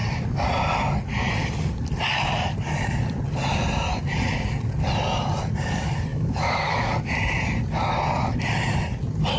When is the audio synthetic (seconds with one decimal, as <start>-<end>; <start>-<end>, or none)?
6.1-6.9